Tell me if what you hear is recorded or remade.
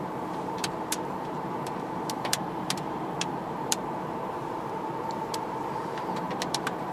remade